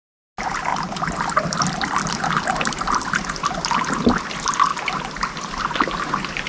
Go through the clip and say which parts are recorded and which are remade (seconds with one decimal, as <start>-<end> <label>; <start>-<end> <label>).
0.0-0.7 recorded; 0.7-3.2 remade; 3.2-6.5 recorded